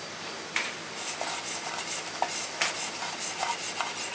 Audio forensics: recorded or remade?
recorded